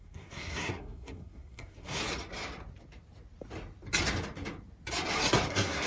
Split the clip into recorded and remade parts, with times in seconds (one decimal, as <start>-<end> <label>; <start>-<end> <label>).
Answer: 0.0-2.0 remade; 2.0-5.5 recorded; 5.5-5.9 remade